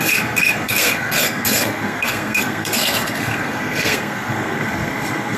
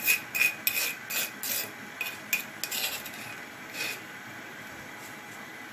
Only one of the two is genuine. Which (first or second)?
second